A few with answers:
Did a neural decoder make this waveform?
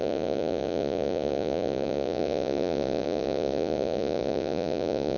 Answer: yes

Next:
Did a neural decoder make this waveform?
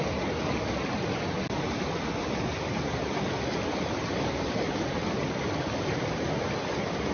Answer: no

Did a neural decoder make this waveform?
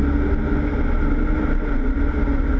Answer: no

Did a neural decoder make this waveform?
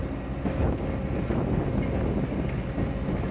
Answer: no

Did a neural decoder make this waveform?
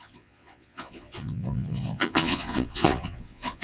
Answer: yes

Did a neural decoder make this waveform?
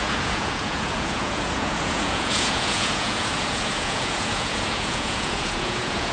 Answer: yes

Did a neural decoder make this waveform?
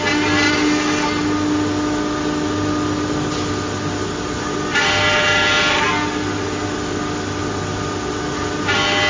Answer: no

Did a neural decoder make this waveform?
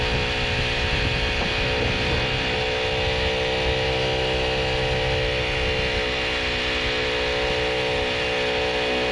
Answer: no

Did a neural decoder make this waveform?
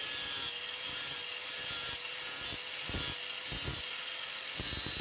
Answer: no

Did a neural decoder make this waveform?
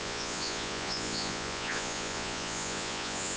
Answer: yes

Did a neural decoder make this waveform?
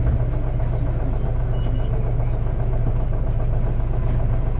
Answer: no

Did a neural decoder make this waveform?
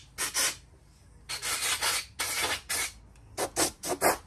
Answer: no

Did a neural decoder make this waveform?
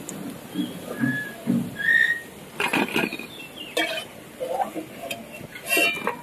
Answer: no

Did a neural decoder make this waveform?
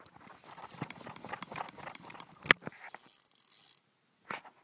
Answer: no